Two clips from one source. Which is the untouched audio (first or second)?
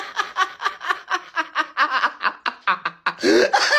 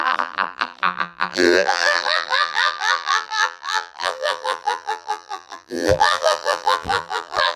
first